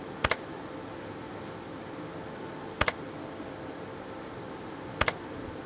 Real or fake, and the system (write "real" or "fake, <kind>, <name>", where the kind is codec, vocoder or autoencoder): real